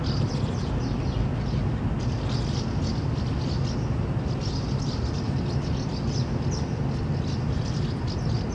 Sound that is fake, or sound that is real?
real